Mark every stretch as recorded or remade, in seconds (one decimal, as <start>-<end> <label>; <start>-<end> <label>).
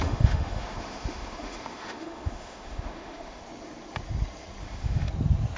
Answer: 0.0-3.4 remade; 3.4-4.6 recorded; 4.6-5.1 remade; 5.1-5.6 recorded